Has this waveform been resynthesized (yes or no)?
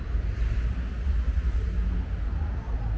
no